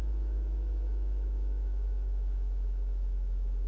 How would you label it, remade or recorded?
remade